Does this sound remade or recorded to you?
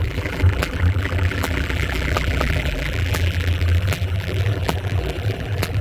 remade